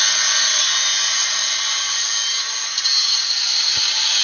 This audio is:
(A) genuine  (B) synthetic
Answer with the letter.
A